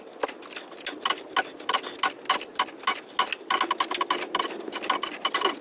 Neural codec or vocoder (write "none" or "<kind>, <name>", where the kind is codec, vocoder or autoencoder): none